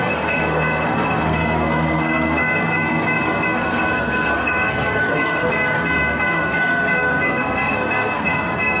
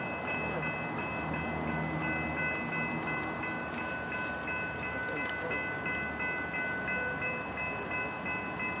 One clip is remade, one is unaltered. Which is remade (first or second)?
first